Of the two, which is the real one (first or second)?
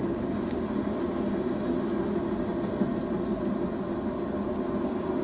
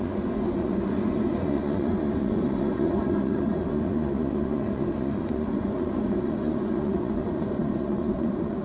first